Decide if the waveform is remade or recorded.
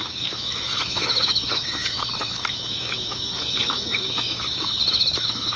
remade